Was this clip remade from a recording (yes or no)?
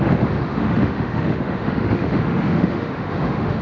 yes